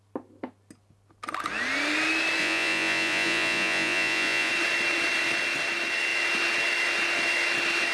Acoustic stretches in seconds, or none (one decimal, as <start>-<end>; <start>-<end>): 0.0-2.4; 4.5-7.9